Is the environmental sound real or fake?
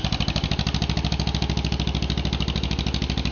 real